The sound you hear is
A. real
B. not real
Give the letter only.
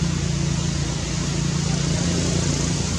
A